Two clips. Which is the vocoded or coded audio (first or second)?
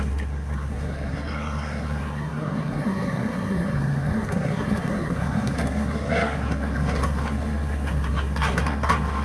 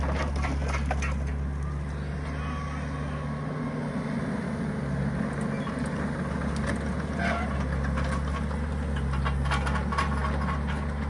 first